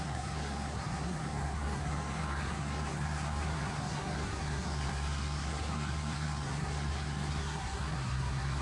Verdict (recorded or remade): remade